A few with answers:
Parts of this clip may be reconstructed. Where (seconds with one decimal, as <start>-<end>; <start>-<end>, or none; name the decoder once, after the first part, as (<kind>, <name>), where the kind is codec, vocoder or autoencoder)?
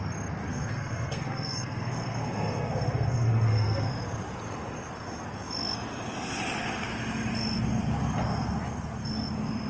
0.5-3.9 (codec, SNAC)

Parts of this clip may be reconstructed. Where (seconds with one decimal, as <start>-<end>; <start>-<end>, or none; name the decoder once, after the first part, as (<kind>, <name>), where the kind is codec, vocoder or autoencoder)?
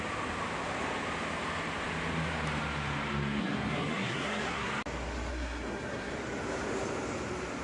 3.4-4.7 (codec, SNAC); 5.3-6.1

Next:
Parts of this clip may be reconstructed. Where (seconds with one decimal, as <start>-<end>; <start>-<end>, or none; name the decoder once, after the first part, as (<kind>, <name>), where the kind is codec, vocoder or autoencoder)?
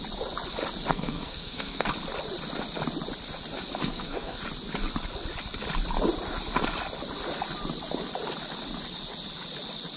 0.9-1.9 (codec, SNAC); 3.8-4.4